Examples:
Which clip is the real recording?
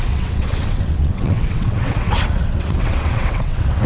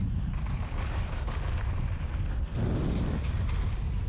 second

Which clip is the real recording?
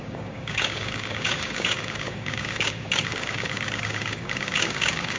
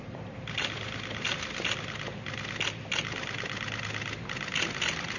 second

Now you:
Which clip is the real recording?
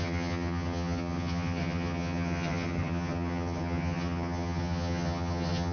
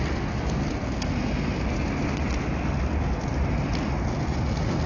second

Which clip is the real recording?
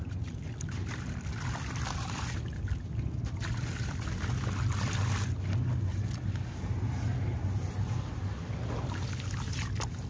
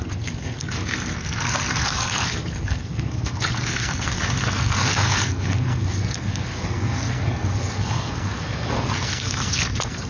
first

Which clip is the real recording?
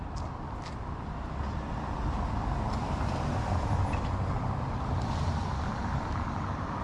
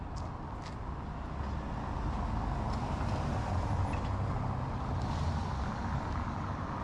second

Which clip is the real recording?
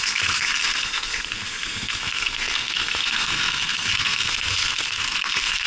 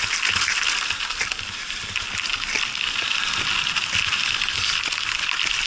second